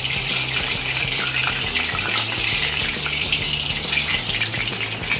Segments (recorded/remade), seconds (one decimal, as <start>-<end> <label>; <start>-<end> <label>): 0.0-5.2 recorded